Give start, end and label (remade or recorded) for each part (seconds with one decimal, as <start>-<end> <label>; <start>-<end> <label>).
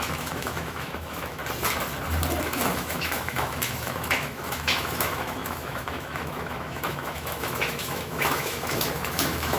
0.0-1.4 remade; 1.4-2.4 recorded; 2.4-9.6 remade